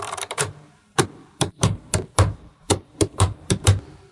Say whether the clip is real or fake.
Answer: fake